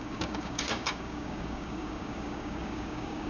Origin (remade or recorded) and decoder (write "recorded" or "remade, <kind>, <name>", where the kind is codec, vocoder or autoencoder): remade, codec, DAC